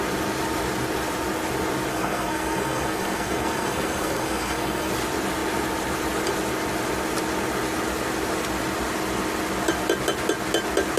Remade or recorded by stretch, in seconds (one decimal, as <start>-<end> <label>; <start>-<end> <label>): 0.0-1.9 recorded; 1.9-4.9 remade; 4.9-11.0 recorded